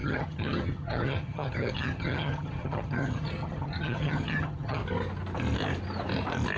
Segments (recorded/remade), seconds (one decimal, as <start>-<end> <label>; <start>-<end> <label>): 0.0-4.8 remade; 4.8-6.6 recorded